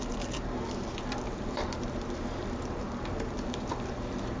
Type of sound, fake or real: fake